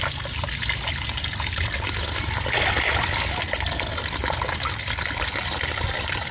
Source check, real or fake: real